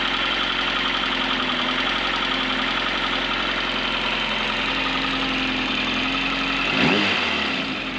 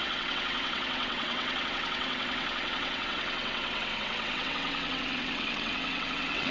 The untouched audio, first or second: first